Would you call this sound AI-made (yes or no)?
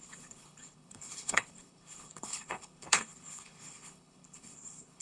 yes